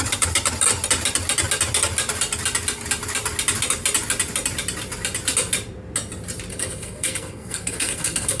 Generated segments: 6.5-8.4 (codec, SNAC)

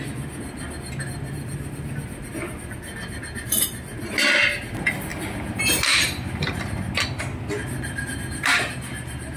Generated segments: none

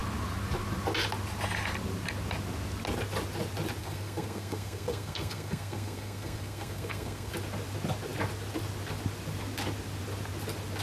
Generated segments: 3.8-7.3 (codec, SNAC)

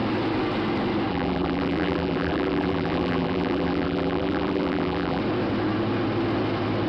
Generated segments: 1.1-5.2 (vocoder, BigVGAN v2)

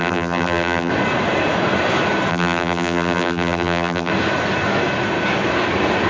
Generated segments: 0.0-0.9 (vocoder, BigVGAN v2); 2.3-4.1

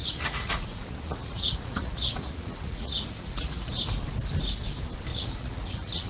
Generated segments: 0.0-3.7 (vocoder, Vocos); 5.1-6.1

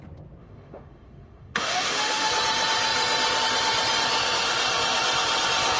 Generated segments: 0.4-2.3 (autoencoder, DAC-VAE)

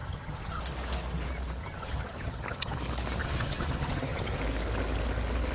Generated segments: 0.0-0.6 (vocoder, HiFi-GAN); 1.6-2.8; 3.2-4.4